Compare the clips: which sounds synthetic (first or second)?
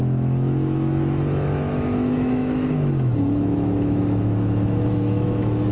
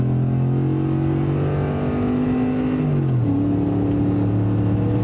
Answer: first